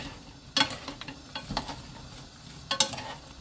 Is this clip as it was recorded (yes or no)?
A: yes